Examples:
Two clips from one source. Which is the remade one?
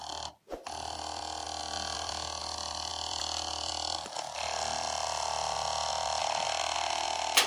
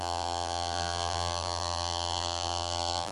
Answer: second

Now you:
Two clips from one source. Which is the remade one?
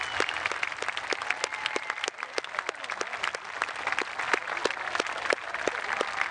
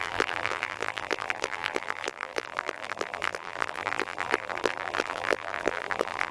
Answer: second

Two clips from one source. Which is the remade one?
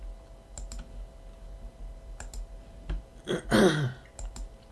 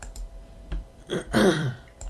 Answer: second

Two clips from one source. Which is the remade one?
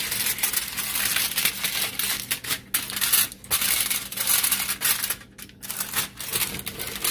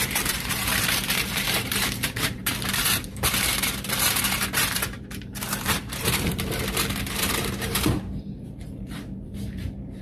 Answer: second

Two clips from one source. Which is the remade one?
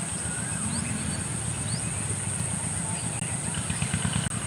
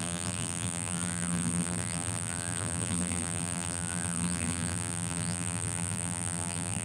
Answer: second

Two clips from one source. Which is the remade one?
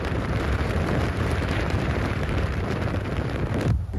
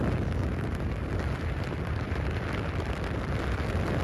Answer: first